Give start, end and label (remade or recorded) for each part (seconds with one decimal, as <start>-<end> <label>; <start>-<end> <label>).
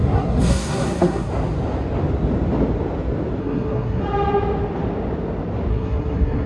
0.0-1.3 remade; 1.3-3.4 recorded; 3.4-4.0 remade; 4.0-5.7 recorded; 5.7-6.5 remade